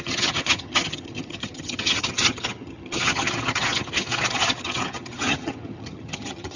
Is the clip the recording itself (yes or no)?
no